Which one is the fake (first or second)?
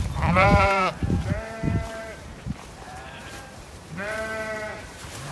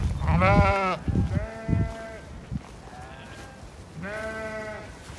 first